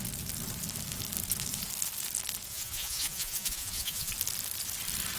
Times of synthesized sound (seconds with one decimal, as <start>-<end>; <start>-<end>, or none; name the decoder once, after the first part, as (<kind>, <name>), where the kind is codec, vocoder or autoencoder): 2.5-4.1 (vocoder, Vocos)